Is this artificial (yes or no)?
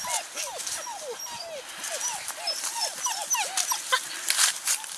no